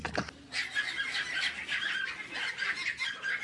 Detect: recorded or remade recorded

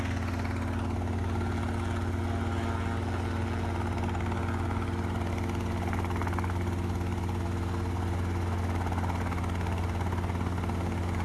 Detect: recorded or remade recorded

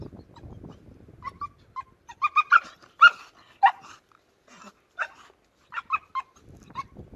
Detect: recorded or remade recorded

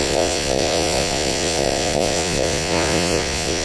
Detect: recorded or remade remade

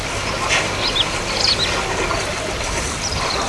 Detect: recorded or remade recorded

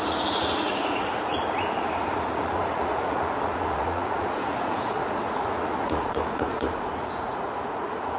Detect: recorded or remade remade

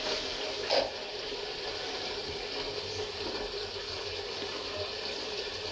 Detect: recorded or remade recorded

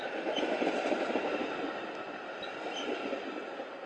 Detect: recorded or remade recorded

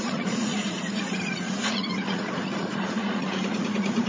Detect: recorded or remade remade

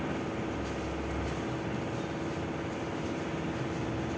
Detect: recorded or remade recorded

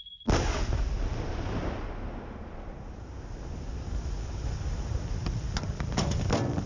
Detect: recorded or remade recorded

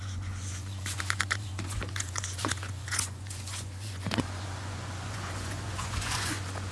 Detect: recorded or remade remade